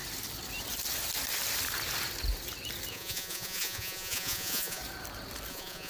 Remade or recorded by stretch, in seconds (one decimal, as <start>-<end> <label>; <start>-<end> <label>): 0.0-2.9 recorded; 2.9-4.8 remade; 4.8-5.5 recorded; 5.5-5.9 remade